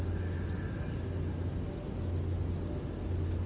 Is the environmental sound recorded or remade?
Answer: recorded